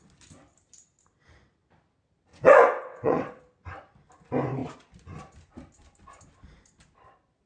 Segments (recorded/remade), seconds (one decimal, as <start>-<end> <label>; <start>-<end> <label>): 0.0-2.3 recorded; 2.3-3.4 remade; 3.4-7.5 recorded